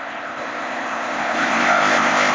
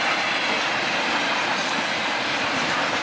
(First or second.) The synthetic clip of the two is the first